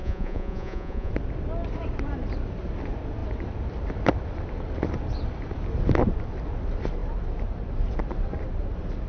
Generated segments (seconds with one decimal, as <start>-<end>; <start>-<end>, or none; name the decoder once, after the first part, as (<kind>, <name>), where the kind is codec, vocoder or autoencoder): 0.0-1.1 (vocoder, Vocos)